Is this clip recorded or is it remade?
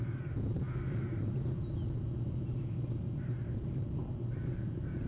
recorded